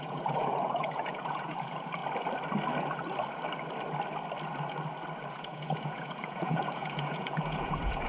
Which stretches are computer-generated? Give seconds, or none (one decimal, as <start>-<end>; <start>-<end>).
0.0-2.0; 5.3-8.1

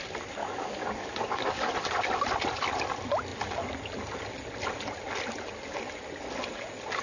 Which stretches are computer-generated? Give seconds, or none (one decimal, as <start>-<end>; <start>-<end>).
0.4-1.7

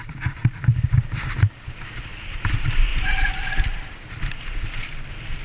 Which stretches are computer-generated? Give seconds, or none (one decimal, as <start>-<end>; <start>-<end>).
0.4-1.5; 2.9-4.2